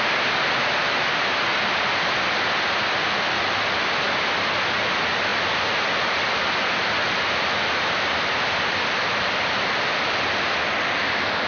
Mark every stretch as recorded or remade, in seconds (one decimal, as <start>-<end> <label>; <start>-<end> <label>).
0.0-11.5 recorded